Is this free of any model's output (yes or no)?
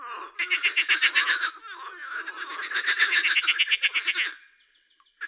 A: yes